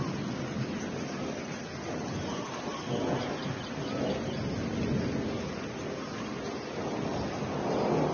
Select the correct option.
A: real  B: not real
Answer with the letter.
A